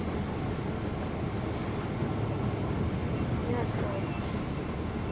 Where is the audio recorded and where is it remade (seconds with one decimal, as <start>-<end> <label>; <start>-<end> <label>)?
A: 0.0-5.1 recorded